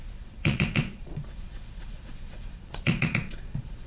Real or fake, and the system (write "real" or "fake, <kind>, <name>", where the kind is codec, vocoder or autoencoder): fake, vocoder, Vocos